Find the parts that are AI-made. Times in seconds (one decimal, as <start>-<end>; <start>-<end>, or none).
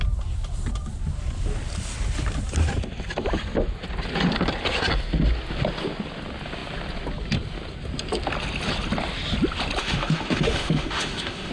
9.8-11.5